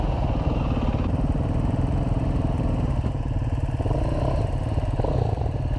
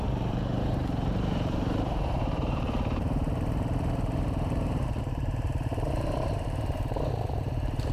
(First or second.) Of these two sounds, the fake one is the second